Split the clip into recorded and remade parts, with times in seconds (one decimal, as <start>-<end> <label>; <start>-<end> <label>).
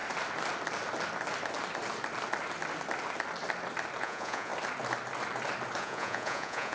0.0-4.0 recorded; 4.0-4.5 remade; 4.5-5.8 recorded; 5.8-6.7 remade